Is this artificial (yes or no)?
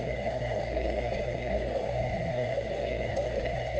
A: yes